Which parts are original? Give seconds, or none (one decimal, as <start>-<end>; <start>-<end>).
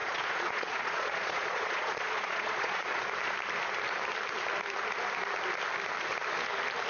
3.0-6.9